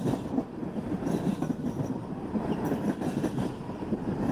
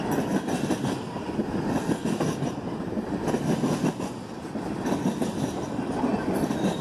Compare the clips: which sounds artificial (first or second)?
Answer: first